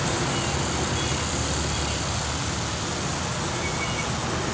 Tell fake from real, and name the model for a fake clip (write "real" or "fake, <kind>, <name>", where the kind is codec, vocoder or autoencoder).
real